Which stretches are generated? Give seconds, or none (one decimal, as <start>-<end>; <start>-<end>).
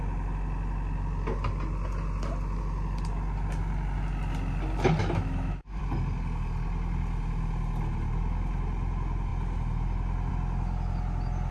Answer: 5.0-5.8